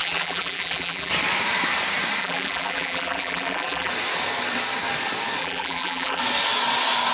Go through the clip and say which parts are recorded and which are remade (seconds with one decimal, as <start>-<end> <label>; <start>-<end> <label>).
0.0-1.1 remade; 1.1-2.2 recorded; 2.2-3.9 remade; 3.9-5.4 recorded; 5.4-6.2 remade; 6.2-7.1 recorded